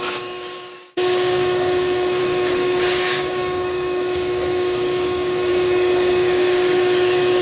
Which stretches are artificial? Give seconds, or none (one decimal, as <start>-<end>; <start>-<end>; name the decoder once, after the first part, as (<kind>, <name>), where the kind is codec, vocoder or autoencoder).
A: 0.0-7.4 (codec, DAC)